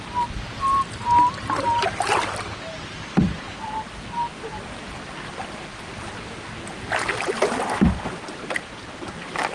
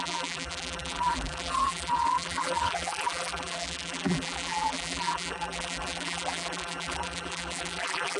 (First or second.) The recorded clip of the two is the first